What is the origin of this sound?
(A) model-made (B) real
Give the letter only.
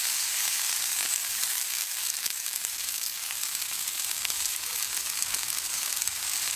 A